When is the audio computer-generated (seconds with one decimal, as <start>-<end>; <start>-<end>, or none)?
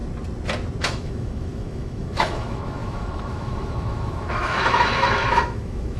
0.8-6.0